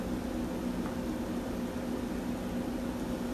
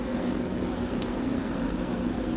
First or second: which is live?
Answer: first